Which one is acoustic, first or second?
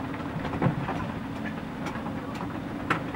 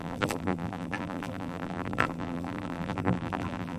first